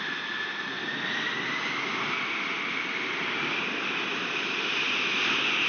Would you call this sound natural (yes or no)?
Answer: yes